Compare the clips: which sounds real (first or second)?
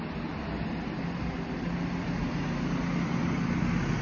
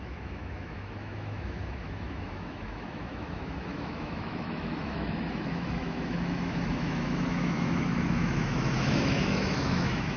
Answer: first